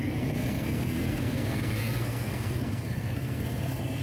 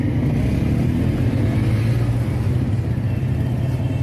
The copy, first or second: first